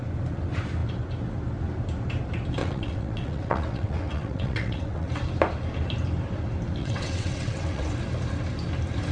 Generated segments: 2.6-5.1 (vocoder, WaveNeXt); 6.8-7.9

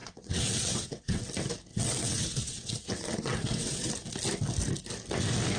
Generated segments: 0.0-1.2 (vocoder, WaveNeXt); 1.7-3.9

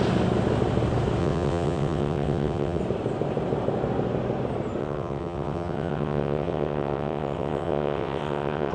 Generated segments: 1.2-2.8 (vocoder, WaveNeXt); 4.8-8.7

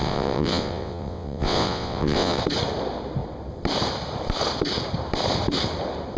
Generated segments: 0.0-2.4 (vocoder, WaveNeXt)

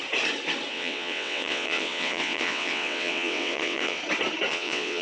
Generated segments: 0.7-4.0 (vocoder, WaveNeXt); 4.5-5.0

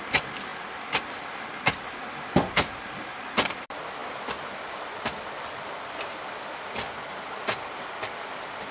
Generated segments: none